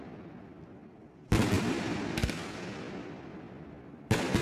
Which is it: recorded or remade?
recorded